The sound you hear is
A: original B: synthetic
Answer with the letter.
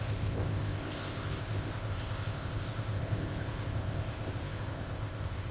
B